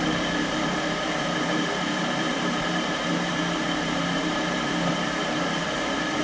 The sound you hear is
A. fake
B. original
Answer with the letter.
A